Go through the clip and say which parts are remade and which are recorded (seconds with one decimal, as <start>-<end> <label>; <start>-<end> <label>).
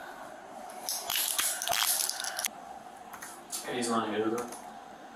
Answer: 0.0-1.9 remade; 1.9-5.2 recorded